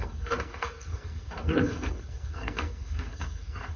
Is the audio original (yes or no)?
no